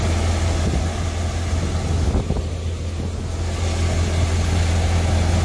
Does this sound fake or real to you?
real